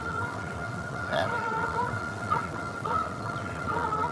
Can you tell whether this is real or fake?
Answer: fake